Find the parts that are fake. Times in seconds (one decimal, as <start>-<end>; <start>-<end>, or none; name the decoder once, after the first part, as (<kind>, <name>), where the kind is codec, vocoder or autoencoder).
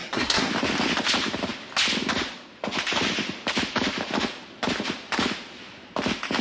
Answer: 0.0-0.5 (codec, SNAC)